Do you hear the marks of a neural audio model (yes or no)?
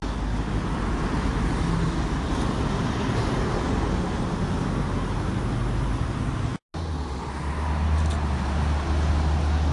no